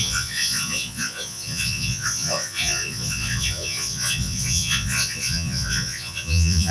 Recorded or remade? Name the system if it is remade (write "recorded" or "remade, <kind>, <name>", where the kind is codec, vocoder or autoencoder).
remade, vocoder, Vocos